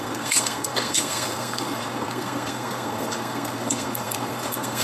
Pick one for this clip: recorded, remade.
remade